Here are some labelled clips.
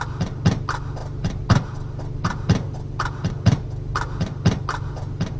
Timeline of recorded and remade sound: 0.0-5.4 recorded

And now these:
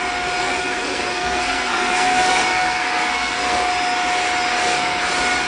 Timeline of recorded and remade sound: 0.0-0.4 recorded; 0.4-3.7 remade; 3.7-4.5 recorded; 4.5-5.0 remade; 5.0-5.5 recorded

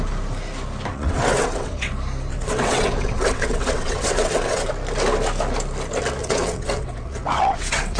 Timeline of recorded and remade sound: 0.0-0.9 recorded; 0.9-1.9 remade; 1.9-2.3 recorded; 2.3-4.7 remade; 4.7-6.2 recorded; 6.2-8.0 remade

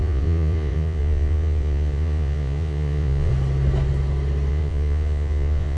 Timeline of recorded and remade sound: 0.0-3.3 remade; 3.3-4.5 recorded; 4.5-5.8 remade

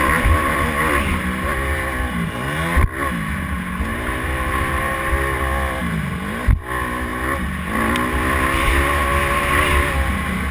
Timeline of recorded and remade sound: 0.0-3.9 recorded; 3.9-5.1 remade; 5.1-10.5 recorded

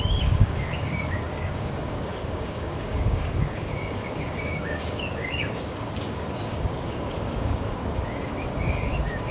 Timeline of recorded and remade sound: 0.0-9.3 remade

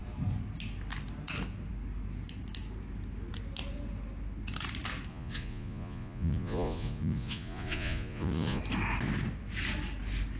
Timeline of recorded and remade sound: 0.0-5.1 recorded; 5.1-8.6 remade; 8.6-10.4 recorded

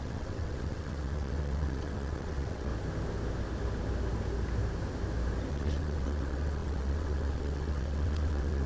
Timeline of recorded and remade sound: 0.0-2.7 remade; 2.7-5.5 recorded; 5.5-8.7 remade